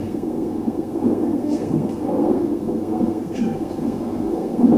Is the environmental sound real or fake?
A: fake